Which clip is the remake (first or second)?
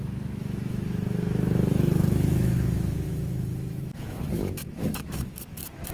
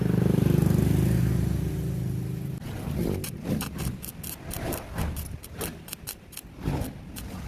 first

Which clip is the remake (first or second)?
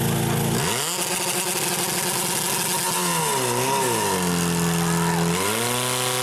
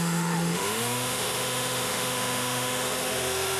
second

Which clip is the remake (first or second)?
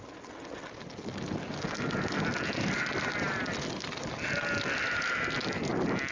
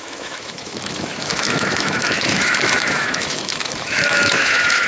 second